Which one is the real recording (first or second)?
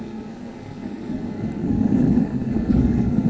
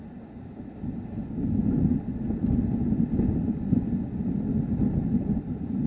second